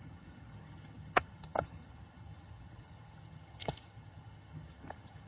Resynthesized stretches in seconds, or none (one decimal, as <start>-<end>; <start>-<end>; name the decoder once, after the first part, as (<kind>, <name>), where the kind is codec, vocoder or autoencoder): 0.0-5.3 (vocoder, HiFi-GAN)